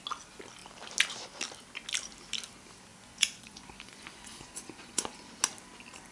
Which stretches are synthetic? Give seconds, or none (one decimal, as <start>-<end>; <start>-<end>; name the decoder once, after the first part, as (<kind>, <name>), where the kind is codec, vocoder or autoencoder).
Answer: 2.9-5.3 (vocoder, Vocos)